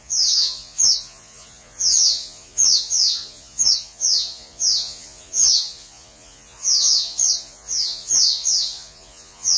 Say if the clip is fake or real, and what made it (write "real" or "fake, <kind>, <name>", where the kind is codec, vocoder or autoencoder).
fake, vocoder, Vocos